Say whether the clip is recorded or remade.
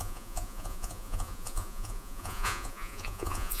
remade